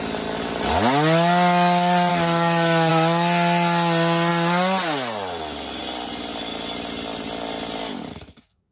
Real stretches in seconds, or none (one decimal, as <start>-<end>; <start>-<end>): 0.0-2.1; 2.9-7.8